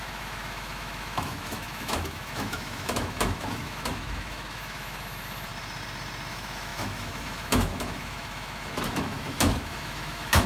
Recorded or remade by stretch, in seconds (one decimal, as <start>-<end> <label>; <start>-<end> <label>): 0.0-5.5 remade; 5.5-6.3 recorded; 6.3-10.5 remade